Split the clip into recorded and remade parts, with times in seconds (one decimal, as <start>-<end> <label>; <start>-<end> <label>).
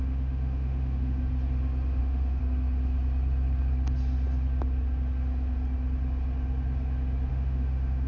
0.0-1.2 remade; 1.2-2.0 recorded; 2.0-2.4 remade; 2.4-7.3 recorded; 7.3-8.1 remade